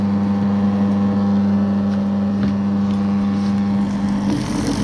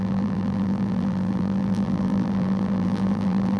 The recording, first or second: first